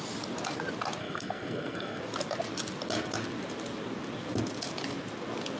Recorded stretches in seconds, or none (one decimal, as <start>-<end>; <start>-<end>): 0.0-1.0; 2.0-5.6